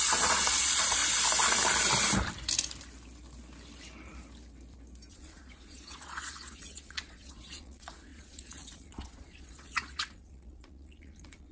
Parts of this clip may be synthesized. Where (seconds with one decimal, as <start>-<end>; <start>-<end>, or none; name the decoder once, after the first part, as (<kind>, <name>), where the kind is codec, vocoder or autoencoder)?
0.0-1.0 (vocoder, Vocos); 5.1-11.5

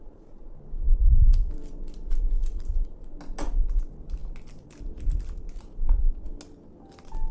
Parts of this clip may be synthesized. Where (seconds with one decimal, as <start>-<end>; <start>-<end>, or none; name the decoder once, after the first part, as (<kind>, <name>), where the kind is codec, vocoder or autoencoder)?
none

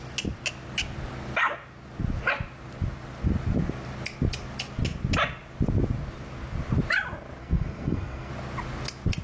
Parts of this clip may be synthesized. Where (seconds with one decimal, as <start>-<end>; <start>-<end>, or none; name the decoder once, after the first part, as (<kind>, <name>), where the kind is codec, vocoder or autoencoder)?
7.4-8.3 (codec, SNAC)

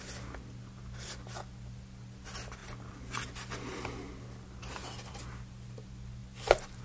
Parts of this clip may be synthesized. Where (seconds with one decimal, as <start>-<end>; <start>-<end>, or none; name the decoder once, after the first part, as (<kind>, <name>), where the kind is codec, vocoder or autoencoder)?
none

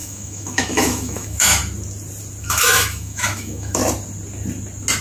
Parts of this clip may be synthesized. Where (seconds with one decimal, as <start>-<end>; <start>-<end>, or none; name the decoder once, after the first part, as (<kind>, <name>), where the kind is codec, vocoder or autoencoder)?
0.0-1.6 (autoencoder, DAC-VAE); 2.4-3.8

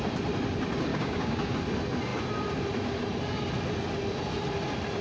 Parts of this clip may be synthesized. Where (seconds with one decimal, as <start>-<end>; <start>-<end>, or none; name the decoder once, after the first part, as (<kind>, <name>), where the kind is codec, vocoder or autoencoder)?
0.9-1.5 (codec, DAC)

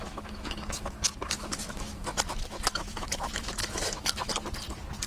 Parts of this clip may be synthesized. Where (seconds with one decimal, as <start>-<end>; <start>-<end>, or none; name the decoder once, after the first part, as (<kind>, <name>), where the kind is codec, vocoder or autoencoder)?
0.0-4.3 (autoencoder, DAC-VAE)